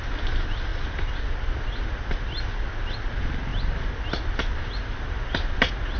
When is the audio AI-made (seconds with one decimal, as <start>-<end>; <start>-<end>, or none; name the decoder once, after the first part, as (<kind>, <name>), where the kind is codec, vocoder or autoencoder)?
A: none